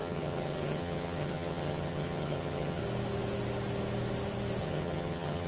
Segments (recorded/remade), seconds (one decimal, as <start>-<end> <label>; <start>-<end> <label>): 0.0-2.8 remade; 2.8-4.6 recorded; 4.6-5.5 remade